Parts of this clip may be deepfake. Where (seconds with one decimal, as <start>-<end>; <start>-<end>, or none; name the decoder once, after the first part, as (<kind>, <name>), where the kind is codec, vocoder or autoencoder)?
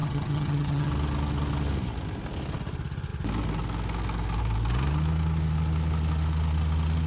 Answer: 0.0-0.9 (vocoder, HiFi-GAN)